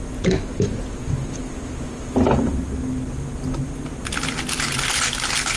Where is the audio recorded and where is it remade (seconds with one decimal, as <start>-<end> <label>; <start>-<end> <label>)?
0.0-5.6 recorded